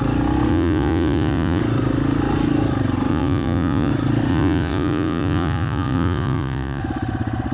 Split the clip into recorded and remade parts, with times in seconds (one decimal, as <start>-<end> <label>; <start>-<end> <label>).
0.0-0.5 recorded; 0.5-1.6 remade; 1.6-3.1 recorded; 3.1-3.9 remade; 3.9-4.3 recorded; 4.3-6.8 remade; 6.8-7.5 recorded

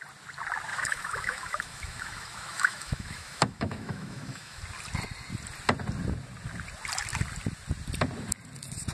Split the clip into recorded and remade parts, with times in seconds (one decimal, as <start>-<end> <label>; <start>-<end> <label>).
0.0-0.7 recorded; 0.7-4.6 remade; 4.6-8.9 recorded

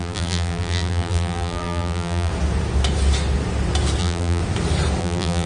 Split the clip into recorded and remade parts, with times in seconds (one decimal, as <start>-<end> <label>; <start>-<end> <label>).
0.0-2.3 remade; 2.3-4.0 recorded; 4.0-4.4 remade; 4.4-5.0 recorded; 5.0-5.5 remade

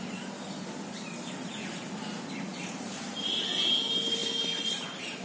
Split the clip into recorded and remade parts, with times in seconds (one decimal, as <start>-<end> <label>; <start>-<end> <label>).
0.0-2.5 recorded; 2.5-3.4 remade; 3.4-5.2 recorded

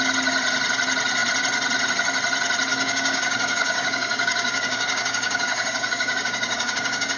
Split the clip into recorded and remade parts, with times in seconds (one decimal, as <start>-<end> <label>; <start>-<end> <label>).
0.0-2.7 recorded; 2.7-7.2 remade

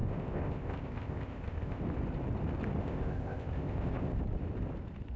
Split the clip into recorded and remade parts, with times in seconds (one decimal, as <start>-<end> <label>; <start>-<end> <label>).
0.0-1.8 remade; 1.8-2.8 recorded; 2.8-4.2 remade; 4.2-5.2 recorded

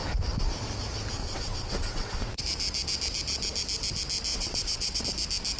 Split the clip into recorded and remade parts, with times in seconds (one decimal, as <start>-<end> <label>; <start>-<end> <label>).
0.0-1.2 recorded; 1.2-2.4 remade; 2.4-4.3 recorded; 4.3-5.0 remade; 5.0-5.6 recorded